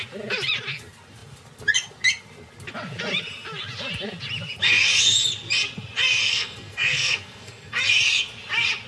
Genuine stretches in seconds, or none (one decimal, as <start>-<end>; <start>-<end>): 0.0-6.2; 7.8-8.9